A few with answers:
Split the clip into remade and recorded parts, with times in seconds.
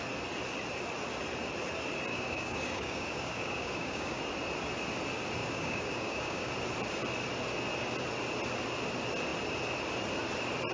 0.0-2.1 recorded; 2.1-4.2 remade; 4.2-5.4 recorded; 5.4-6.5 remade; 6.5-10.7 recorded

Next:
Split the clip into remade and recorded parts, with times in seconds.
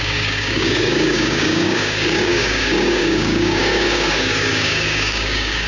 0.0-5.7 remade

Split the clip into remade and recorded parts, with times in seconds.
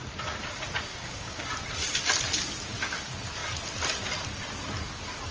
0.0-0.9 recorded; 0.9-1.4 remade; 1.4-5.3 recorded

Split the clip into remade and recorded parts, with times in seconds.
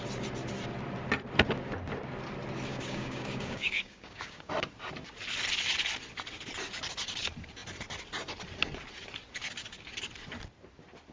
0.0-2.7 recorded; 2.7-4.5 remade; 4.5-11.1 recorded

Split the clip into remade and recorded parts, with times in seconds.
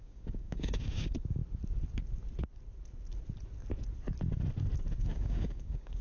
0.0-1.4 remade; 1.4-5.0 recorded; 5.0-6.0 remade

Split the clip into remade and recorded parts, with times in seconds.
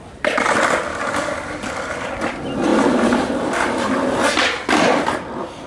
0.0-0.9 recorded; 0.9-2.1 remade; 2.1-5.7 recorded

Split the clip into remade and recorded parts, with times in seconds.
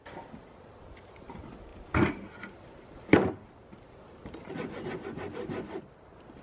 0.0-6.4 recorded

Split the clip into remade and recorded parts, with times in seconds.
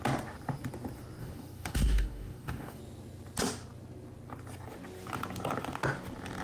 0.0-1.2 recorded; 1.2-2.8 remade; 2.8-6.4 recorded